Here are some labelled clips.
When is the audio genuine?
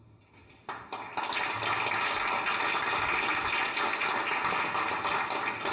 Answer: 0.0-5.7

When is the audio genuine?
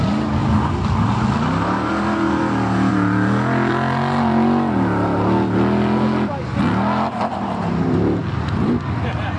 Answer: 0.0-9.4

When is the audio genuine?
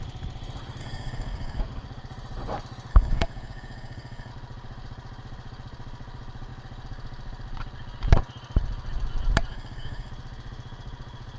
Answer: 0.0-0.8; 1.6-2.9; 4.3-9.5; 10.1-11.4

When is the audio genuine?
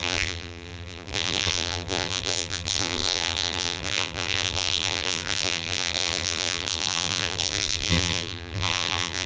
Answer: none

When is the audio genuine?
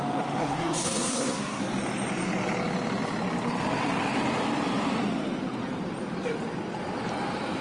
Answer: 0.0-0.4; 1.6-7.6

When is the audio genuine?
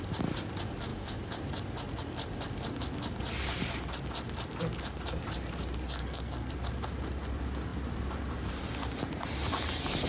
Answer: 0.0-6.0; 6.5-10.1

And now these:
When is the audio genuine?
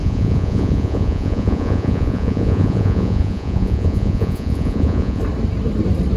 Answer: 5.2-6.2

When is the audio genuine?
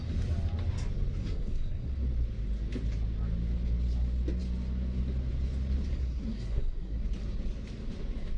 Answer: 0.0-1.2; 1.9-5.9; 7.0-8.4